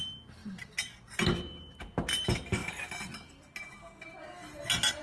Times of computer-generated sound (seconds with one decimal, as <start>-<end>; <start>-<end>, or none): none